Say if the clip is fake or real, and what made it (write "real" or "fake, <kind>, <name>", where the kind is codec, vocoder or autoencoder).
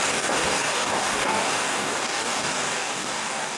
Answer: fake, codec, DAC